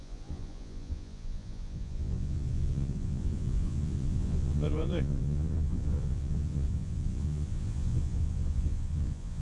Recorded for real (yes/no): no